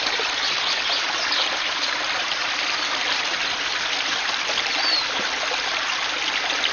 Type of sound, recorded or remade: recorded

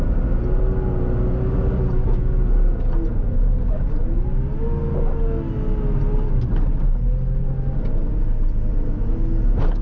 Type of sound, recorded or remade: recorded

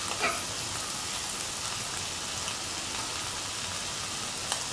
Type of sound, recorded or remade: recorded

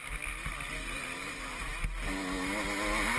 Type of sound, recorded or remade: recorded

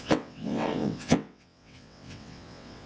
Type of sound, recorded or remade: remade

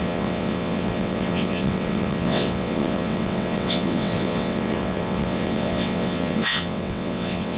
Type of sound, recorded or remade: remade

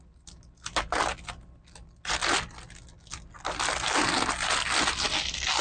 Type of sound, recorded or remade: recorded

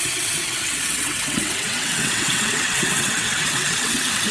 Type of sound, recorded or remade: remade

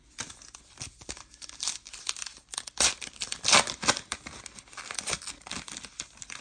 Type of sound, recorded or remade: recorded